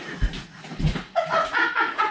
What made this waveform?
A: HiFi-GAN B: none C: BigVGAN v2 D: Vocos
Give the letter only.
D